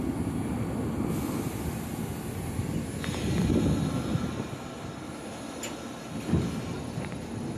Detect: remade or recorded recorded